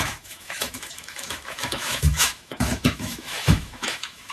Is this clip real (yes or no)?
no